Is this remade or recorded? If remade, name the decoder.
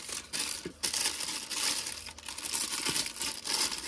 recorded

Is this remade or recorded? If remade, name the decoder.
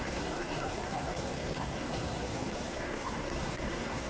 remade, codec, SNAC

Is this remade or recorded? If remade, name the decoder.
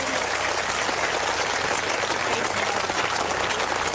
recorded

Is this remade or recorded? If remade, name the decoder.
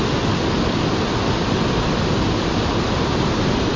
recorded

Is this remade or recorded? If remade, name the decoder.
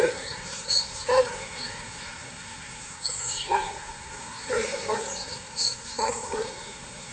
remade, codec, SNAC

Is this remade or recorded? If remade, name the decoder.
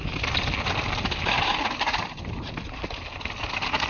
recorded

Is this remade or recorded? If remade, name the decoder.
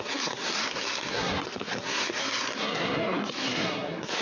remade, codec, SNAC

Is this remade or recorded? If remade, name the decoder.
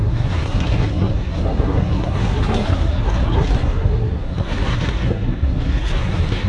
remade, codec, SNAC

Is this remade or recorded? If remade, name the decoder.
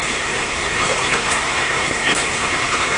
remade, codec, SNAC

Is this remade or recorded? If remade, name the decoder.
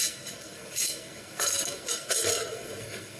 remade, codec, SNAC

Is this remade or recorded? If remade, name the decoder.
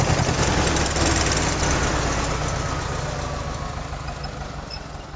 recorded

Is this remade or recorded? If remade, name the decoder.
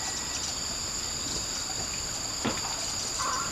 recorded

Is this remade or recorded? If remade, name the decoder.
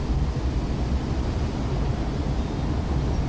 recorded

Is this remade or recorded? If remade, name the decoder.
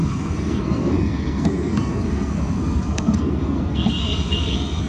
remade, codec, SNAC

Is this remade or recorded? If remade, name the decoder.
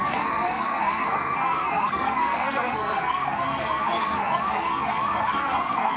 remade, codec, SNAC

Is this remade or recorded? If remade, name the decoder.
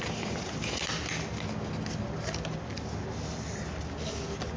recorded